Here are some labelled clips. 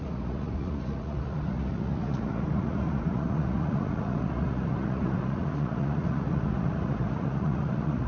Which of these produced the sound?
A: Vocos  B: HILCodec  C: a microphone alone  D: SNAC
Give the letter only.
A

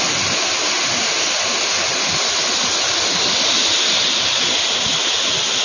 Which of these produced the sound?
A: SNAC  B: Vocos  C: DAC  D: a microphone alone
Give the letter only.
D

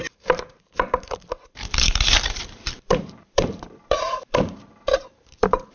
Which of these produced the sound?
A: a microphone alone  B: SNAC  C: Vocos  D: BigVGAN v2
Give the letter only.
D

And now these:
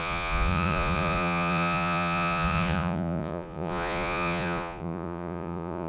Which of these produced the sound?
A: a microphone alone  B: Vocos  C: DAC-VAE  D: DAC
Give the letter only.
B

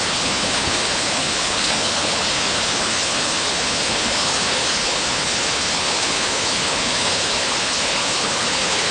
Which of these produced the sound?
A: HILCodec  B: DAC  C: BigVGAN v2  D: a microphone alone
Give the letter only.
A